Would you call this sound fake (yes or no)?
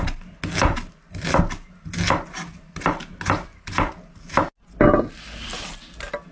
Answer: no